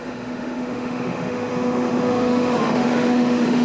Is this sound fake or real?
fake